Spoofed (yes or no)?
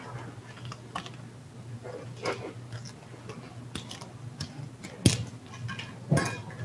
no